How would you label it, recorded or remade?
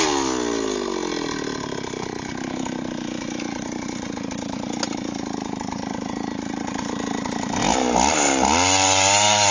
recorded